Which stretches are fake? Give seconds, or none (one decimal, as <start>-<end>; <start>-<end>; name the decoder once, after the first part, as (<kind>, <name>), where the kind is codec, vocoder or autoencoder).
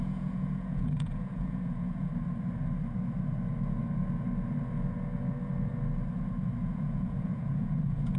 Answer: 0.0-2.1 (vocoder, Vocos); 6.6-8.2